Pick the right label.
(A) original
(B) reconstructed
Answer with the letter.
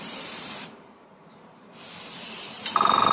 B